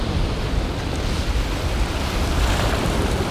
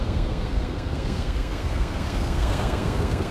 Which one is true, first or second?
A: first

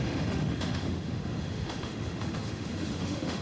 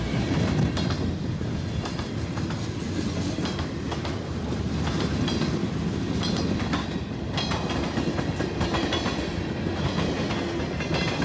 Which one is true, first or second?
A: second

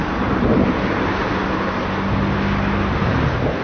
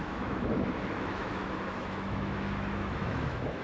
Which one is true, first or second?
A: first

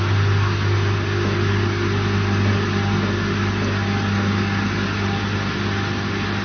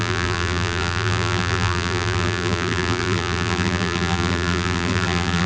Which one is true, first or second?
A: first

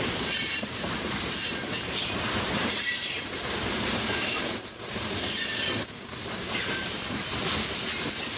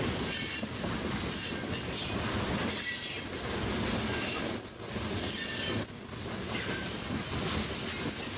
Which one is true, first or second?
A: second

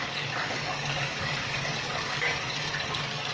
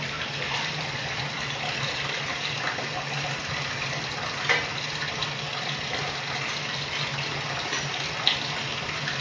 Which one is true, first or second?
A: second